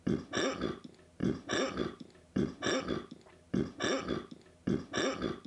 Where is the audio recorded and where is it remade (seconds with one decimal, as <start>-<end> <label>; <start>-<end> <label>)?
0.0-1.2 recorded; 1.2-2.8 remade; 2.8-5.5 recorded